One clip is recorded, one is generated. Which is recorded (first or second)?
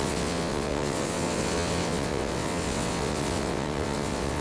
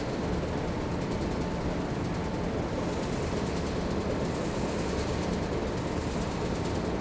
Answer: second